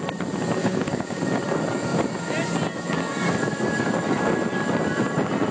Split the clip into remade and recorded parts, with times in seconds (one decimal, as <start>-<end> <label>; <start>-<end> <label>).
0.0-0.6 recorded; 0.6-1.2 remade; 1.2-5.5 recorded